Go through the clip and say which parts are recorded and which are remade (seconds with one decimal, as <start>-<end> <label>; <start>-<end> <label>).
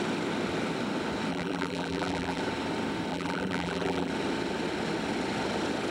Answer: 0.0-1.3 recorded; 1.3-2.4 remade; 2.4-3.1 recorded; 3.1-4.1 remade; 4.1-5.9 recorded